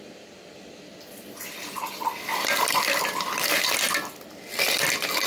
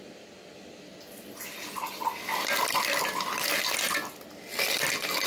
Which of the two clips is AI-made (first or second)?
first